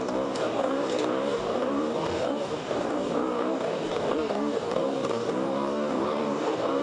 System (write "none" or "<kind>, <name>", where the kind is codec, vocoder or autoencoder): codec, DAC